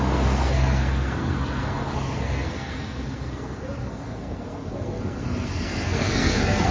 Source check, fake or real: fake